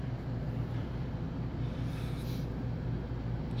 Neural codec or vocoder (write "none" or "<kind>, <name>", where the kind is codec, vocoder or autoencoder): vocoder, BigVGAN v2